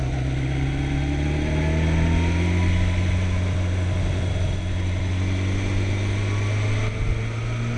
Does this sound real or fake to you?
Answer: real